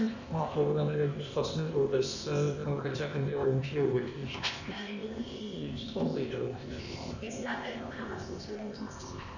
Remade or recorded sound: remade